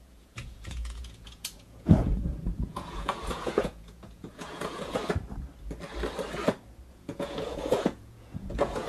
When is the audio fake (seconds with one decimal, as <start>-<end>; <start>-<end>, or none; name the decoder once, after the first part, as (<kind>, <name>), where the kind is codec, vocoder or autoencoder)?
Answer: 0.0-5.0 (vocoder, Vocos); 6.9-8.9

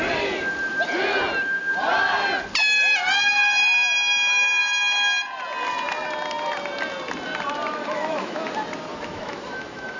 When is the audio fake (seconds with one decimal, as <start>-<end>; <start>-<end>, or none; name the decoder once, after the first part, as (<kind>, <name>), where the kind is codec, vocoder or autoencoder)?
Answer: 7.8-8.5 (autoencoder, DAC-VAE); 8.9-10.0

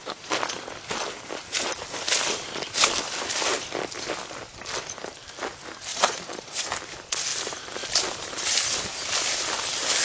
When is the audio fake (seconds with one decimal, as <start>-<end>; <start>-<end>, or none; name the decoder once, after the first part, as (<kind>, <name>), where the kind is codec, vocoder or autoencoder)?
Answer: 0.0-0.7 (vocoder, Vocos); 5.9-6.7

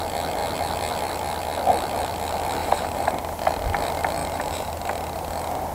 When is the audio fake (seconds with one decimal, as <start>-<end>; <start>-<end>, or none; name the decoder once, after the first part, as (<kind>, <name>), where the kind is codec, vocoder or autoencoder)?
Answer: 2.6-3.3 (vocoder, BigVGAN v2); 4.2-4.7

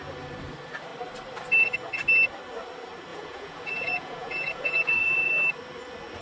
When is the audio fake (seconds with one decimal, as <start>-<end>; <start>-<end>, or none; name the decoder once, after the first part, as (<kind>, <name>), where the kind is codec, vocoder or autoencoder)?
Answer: 3.1-5.3 (vocoder, Vocos)

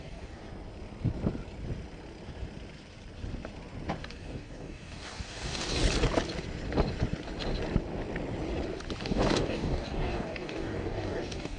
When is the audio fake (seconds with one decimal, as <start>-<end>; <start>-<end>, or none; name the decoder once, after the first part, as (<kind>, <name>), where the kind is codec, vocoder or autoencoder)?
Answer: 0.0-0.4 (codec, DAC); 4.1-5.8; 9.0-11.6

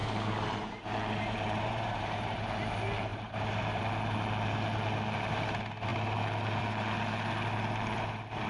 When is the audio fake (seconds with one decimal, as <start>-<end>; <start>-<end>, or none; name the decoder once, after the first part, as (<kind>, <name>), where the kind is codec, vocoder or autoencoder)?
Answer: 0.0-2.3 (vocoder, BigVGAN v2); 3.1-3.8

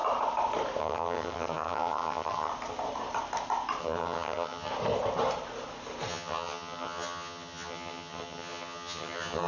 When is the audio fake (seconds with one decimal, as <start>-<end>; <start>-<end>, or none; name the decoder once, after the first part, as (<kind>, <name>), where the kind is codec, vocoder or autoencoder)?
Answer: 0.8-2.5 (vocoder, HiFi-GAN); 3.8-4.7; 6.1-9.5